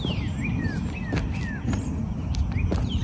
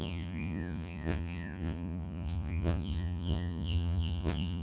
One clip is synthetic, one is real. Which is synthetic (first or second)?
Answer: second